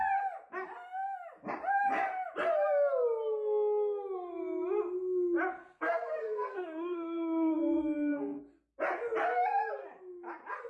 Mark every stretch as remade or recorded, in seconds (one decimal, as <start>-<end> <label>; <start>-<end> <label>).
0.0-5.6 recorded; 5.6-8.4 remade; 8.4-10.7 recorded